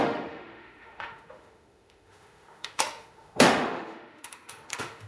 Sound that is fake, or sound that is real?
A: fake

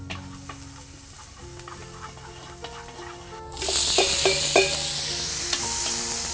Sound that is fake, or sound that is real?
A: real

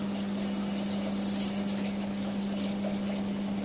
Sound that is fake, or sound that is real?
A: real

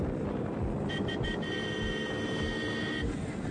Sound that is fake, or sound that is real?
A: real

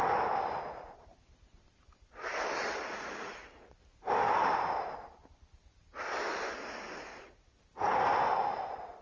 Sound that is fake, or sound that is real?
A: fake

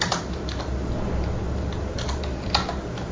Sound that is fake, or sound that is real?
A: real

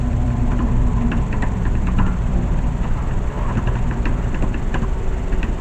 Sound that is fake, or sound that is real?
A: fake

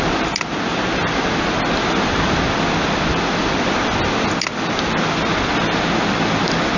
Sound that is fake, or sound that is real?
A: real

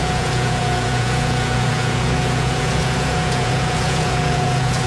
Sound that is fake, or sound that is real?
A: fake